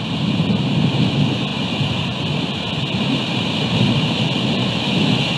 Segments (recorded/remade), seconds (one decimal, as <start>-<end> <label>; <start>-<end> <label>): 0.0-4.6 recorded; 4.6-5.4 remade